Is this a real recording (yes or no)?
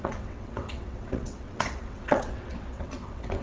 no